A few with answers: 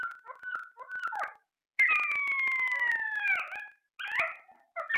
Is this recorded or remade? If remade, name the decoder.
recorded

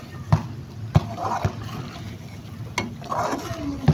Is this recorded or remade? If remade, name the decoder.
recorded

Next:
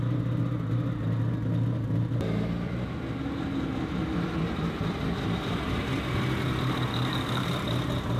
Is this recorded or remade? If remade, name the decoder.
recorded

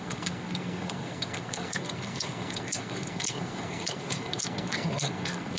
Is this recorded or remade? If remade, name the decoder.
remade, codec, SNAC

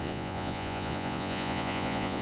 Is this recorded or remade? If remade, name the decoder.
remade, vocoder, Vocos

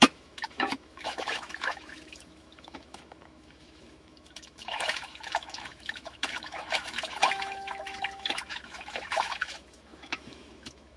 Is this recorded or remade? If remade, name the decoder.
remade, autoencoder, DAC-VAE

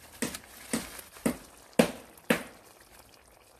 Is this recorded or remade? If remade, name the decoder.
recorded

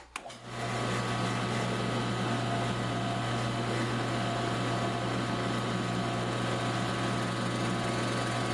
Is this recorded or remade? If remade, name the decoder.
recorded